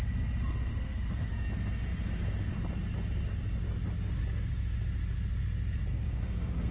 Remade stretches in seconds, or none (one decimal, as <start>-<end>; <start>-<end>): 0.7-1.3; 5.9-6.7